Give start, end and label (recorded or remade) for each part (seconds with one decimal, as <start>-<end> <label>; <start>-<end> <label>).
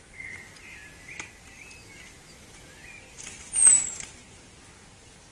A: 0.0-5.3 recorded